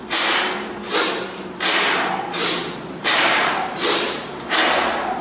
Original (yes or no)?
no